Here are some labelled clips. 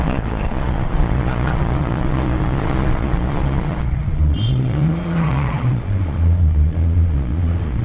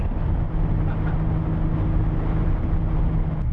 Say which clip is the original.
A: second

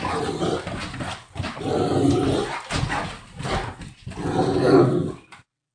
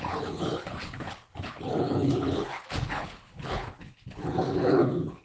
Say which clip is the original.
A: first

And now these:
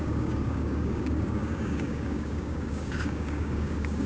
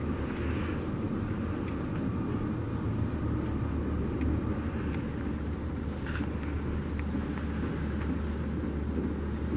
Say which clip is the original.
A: second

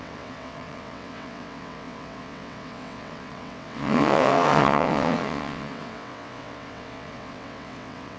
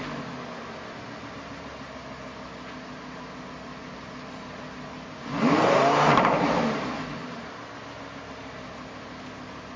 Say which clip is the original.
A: second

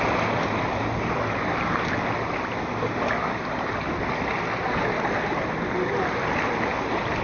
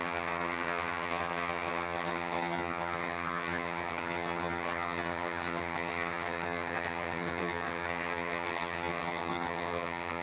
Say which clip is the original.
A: first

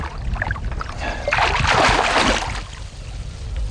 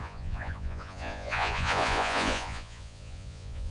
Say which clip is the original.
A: first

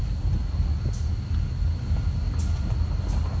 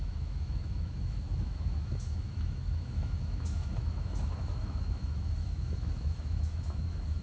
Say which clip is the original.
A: first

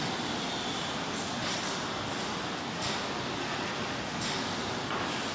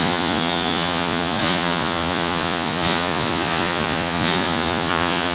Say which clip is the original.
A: first